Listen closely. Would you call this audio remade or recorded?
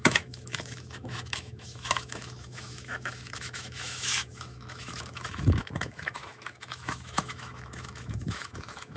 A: remade